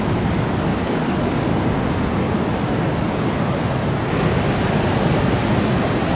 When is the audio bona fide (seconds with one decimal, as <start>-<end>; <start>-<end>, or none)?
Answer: 0.0-0.7; 1.6-6.1